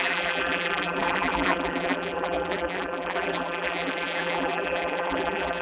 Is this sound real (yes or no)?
no